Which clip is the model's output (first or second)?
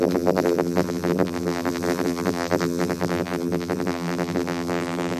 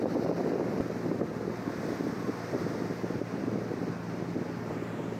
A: first